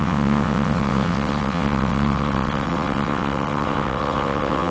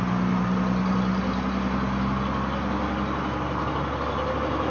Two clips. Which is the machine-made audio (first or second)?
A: first